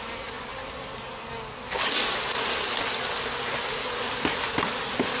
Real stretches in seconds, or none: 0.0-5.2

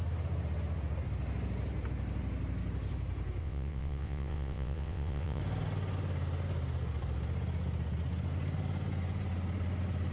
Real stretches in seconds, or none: 0.0-3.4; 5.4-10.1

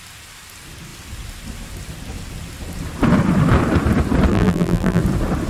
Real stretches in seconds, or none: 0.0-4.3; 5.0-5.5